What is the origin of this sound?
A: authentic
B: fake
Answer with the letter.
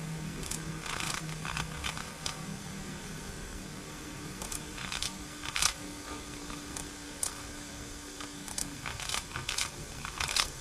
B